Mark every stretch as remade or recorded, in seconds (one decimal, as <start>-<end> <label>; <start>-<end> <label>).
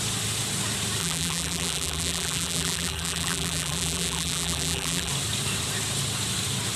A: 0.0-1.0 recorded; 1.0-5.1 remade; 5.1-6.8 recorded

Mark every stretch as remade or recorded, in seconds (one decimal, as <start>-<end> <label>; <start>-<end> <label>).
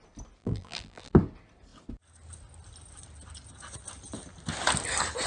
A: 0.0-0.4 recorded; 0.4-1.1 remade; 1.1-5.3 recorded